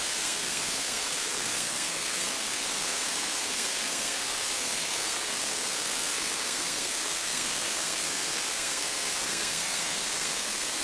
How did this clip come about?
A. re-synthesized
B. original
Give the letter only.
A